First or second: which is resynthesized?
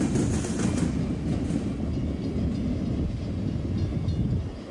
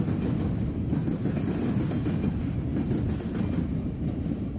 second